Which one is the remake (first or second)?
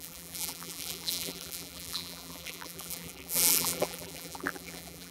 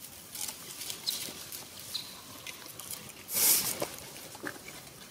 first